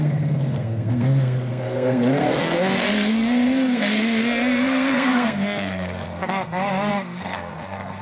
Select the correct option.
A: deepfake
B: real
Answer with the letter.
A